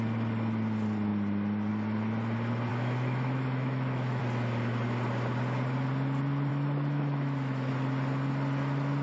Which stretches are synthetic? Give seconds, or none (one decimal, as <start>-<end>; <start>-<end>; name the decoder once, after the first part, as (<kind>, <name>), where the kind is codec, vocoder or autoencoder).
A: 2.7-4.2 (autoencoder, DAC-VAE); 6.5-7.7